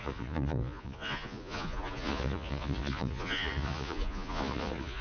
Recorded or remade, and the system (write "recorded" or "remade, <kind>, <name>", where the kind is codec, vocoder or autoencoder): remade, vocoder, Vocos